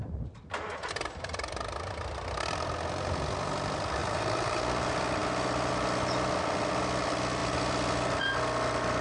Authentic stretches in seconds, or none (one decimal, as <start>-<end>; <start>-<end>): 0.0-4.0; 4.6-9.0